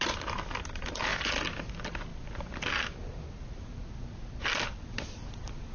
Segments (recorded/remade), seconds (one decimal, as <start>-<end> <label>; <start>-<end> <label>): 0.0-5.7 recorded